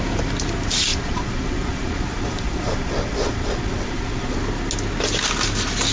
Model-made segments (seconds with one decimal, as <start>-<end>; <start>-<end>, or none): 0.9-4.4